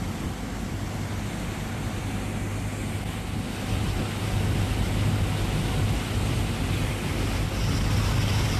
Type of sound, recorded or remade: recorded